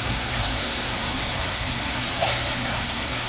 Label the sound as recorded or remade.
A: remade